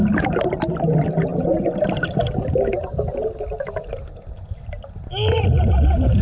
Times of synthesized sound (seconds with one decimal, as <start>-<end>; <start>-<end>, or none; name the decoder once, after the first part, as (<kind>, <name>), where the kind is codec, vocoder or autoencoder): none